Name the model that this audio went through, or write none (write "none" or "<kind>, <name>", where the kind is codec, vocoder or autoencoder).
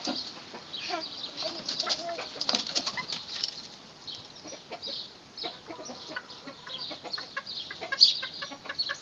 none